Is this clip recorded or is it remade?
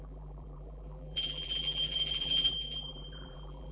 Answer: remade